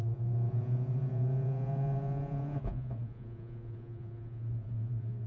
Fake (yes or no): yes